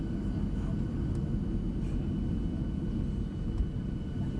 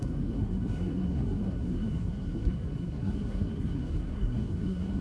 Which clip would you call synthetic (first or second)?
second